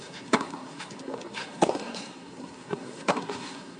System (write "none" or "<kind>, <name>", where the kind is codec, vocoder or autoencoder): codec, SNAC